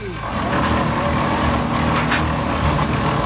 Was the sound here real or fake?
real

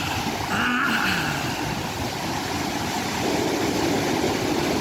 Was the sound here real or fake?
real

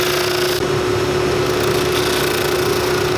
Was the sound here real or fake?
real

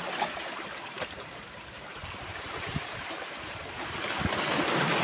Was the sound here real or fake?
fake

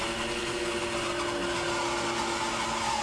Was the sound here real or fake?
real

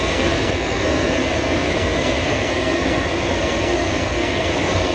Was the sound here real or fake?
fake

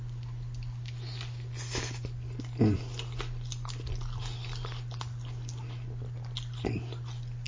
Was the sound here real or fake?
real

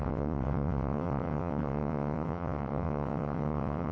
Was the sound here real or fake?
fake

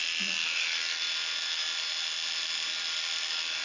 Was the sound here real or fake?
real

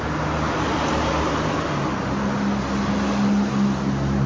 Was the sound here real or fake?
real